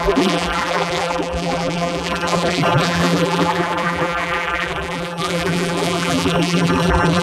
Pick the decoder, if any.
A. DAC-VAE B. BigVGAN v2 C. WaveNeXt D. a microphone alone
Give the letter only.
B